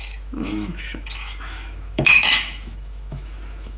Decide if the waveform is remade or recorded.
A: remade